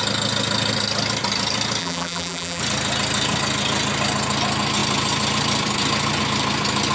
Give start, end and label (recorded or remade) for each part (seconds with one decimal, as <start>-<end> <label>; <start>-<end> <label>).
0.0-1.8 recorded; 1.8-2.6 remade; 2.6-6.9 recorded